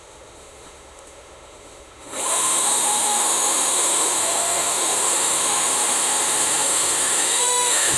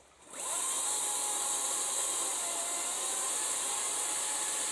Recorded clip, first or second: second